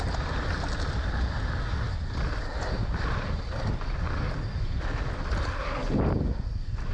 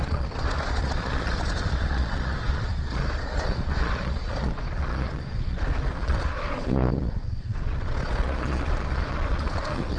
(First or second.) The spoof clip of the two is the second